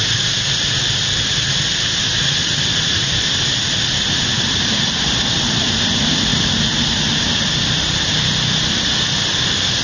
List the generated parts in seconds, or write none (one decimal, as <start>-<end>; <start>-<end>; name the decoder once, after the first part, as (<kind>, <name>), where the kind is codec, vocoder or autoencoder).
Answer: none